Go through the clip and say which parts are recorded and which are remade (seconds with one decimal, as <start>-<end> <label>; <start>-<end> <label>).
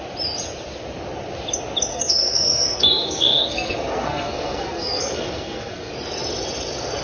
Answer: 0.0-1.9 recorded; 1.9-5.9 remade; 5.9-7.0 recorded